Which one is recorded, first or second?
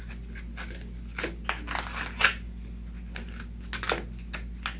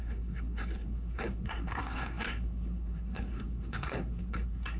first